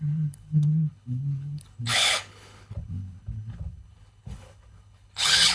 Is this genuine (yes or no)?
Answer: no